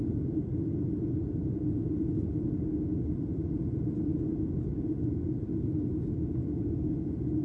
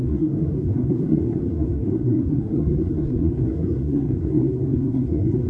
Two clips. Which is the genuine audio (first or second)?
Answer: first